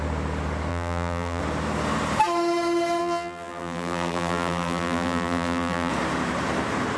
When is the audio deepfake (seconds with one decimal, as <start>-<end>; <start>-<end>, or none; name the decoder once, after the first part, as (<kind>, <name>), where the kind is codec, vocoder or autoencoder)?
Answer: 0.7-1.4 (vocoder, BigVGAN v2); 3.0-5.9